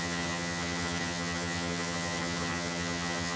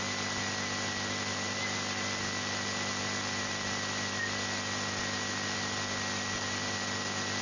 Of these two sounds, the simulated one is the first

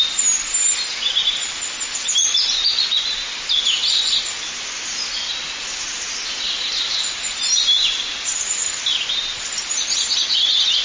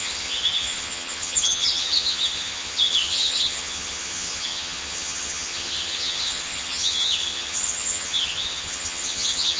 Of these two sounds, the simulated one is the second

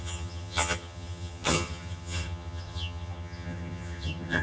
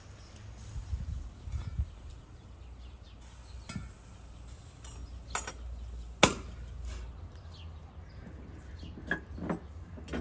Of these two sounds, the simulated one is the first